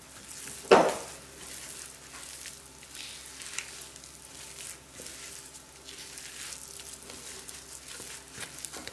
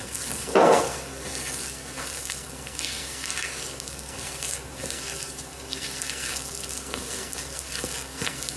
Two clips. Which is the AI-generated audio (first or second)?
second